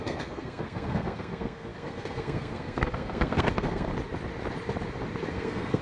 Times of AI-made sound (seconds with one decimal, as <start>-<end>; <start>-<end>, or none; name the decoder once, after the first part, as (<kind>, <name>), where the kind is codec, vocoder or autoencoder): 0.0-3.9 (codec, SNAC); 5.3-5.8